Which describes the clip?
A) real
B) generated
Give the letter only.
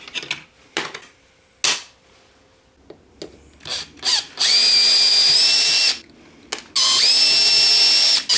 A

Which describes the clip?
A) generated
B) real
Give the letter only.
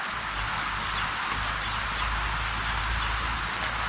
B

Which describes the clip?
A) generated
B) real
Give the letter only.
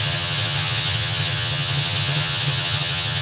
A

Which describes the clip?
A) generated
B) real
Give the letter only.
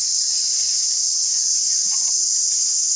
A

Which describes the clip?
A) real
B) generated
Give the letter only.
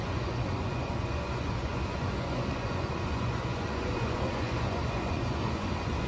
B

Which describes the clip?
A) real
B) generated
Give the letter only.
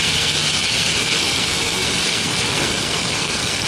B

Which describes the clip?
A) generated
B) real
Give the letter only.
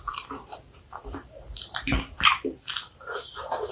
A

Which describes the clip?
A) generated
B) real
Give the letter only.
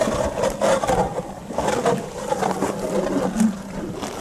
B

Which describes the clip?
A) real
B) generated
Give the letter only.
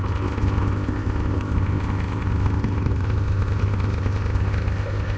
B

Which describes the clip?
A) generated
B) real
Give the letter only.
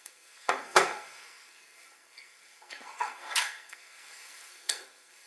A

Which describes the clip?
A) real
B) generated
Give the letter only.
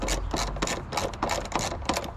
A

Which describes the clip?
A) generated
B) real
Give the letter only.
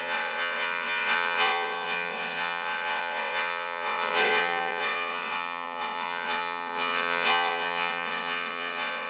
A